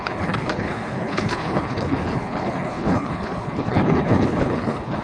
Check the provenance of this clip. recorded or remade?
remade